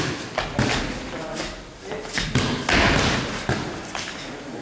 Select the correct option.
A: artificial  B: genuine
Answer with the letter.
B